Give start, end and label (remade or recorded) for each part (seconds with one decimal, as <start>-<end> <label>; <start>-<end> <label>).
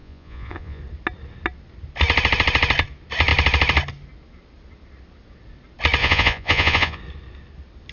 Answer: 0.0-0.8 remade; 0.8-6.0 recorded; 6.0-7.0 remade; 7.0-7.9 recorded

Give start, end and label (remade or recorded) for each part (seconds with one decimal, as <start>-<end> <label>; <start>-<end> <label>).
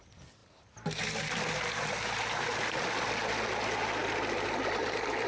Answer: 0.0-5.3 recorded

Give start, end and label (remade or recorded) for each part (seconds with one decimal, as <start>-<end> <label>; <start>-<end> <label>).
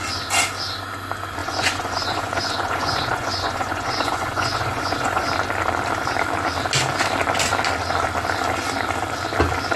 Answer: 0.0-1.4 recorded; 1.4-5.3 remade; 5.3-9.8 recorded